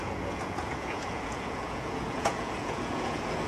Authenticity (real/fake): fake